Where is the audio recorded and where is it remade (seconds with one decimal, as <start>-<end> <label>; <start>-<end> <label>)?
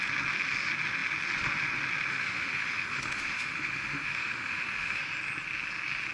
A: 0.0-2.1 recorded; 2.1-5.0 remade; 5.0-6.1 recorded